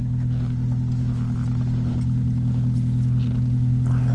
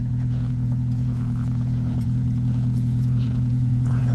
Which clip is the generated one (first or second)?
second